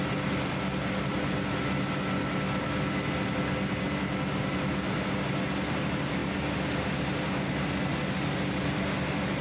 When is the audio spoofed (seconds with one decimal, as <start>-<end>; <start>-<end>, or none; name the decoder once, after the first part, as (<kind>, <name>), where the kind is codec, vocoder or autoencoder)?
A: none